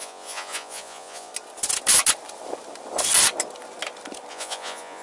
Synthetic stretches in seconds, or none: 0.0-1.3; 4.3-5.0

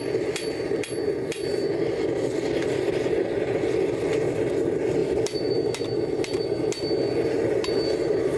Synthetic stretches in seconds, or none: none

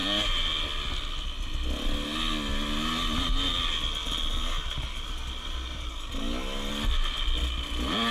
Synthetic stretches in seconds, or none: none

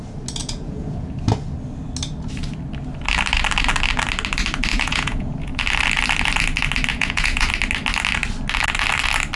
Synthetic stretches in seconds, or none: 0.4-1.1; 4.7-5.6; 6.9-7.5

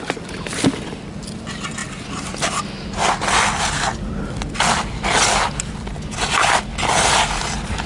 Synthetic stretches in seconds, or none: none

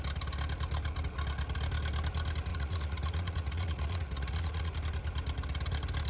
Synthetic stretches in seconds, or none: 2.5-4.7

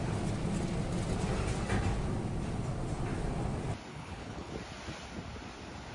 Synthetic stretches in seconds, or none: 3.9-4.5